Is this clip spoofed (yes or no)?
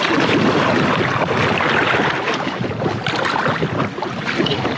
no